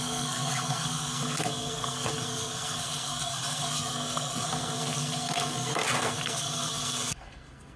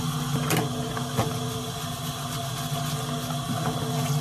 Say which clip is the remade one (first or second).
first